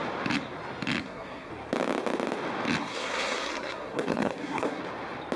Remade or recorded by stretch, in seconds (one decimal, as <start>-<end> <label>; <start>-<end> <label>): 0.0-1.0 recorded; 1.0-1.5 remade; 1.5-2.8 recorded; 2.8-4.8 remade; 4.8-5.4 recorded